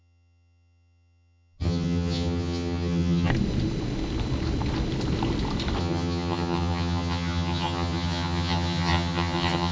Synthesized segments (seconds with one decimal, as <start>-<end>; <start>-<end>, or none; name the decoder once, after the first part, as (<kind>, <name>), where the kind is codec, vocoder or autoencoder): 0.0-3.3 (vocoder, HiFi-GAN); 5.8-9.7